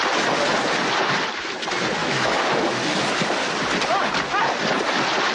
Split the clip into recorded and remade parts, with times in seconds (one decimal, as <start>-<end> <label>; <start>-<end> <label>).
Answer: 0.0-2.0 recorded; 2.0-2.6 remade; 2.6-5.3 recorded